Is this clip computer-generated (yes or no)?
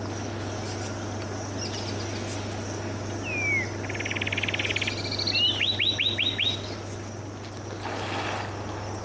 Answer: no